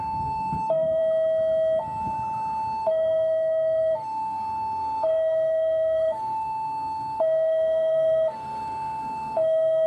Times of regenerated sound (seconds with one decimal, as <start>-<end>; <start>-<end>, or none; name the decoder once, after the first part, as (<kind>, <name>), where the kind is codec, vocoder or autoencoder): 0.0-1.0 (codec, SNAC); 2.8-9.9